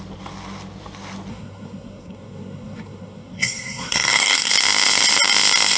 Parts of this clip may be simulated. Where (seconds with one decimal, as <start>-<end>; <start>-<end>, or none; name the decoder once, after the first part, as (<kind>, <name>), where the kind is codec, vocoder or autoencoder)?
1.3-4.5 (codec, SNAC)